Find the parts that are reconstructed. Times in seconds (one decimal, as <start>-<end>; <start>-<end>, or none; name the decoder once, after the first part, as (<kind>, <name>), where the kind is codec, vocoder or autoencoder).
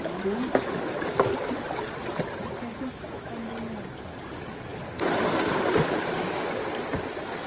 2.7-3.5 (autoencoder, DAC-VAE)